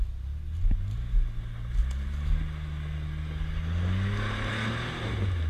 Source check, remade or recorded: recorded